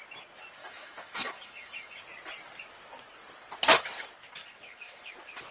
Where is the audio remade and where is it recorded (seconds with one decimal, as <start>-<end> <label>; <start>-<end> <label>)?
0.0-0.6 recorded; 0.6-2.0 remade; 2.0-4.4 recorded; 4.4-5.1 remade; 5.1-5.5 recorded